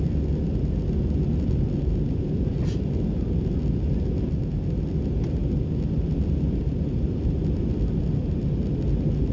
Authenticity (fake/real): real